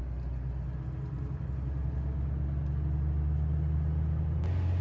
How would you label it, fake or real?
real